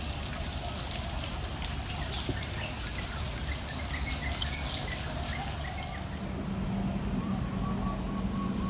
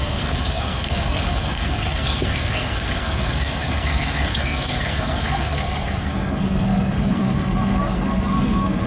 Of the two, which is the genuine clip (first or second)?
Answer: first